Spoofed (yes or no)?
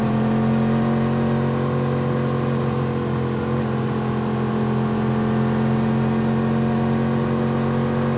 no